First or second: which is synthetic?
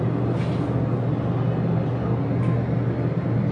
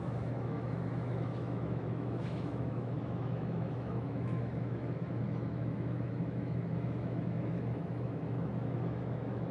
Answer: second